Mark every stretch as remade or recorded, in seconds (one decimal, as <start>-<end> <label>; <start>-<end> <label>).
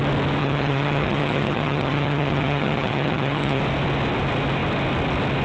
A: 0.0-0.4 recorded; 0.4-3.6 remade; 3.6-5.4 recorded